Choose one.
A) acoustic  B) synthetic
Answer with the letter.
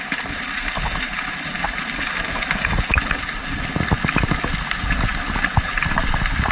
A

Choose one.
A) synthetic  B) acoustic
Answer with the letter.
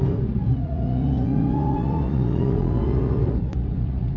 A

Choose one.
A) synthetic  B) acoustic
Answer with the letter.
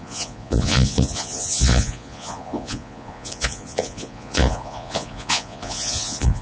A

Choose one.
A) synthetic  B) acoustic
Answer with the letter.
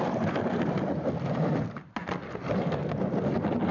B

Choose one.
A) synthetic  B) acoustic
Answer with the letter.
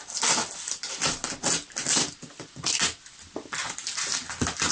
B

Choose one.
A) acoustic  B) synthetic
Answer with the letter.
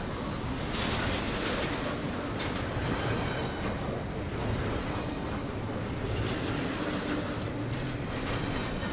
A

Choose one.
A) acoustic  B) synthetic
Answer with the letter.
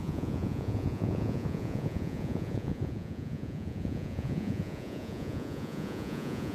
B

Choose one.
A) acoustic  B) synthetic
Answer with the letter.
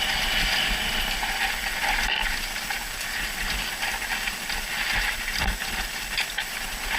A